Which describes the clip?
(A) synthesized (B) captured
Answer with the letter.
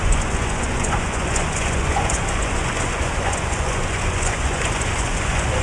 A